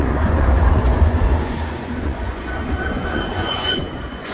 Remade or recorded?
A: remade